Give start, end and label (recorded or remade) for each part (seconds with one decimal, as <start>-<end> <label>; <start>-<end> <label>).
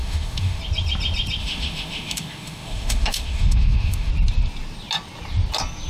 0.0-0.6 remade; 0.6-1.4 recorded; 1.4-4.1 remade; 4.1-5.9 recorded